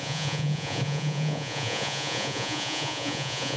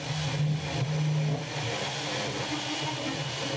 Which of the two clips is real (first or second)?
second